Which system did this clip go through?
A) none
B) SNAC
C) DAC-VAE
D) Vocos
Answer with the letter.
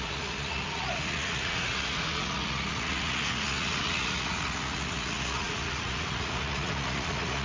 D